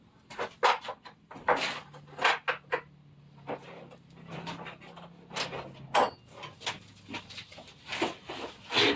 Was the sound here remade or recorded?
recorded